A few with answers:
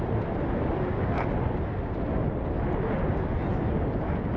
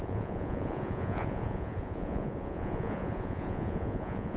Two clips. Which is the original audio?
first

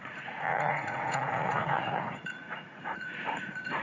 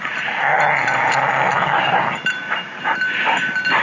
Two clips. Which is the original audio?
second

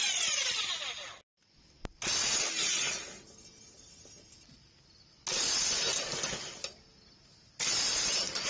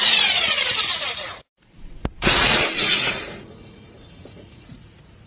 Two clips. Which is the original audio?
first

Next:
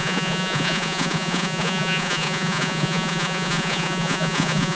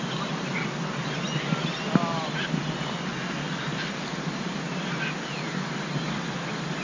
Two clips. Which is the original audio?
second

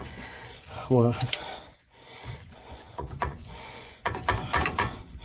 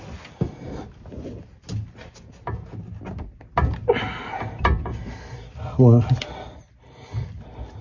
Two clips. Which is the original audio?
second